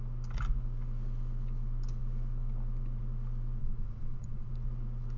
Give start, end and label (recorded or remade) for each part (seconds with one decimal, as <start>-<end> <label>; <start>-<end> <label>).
0.0-3.6 recorded; 3.6-4.5 remade; 4.5-5.2 recorded